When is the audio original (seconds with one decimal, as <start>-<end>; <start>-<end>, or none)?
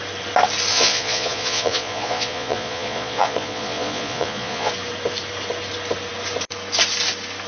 0.0-0.7; 4.7-7.5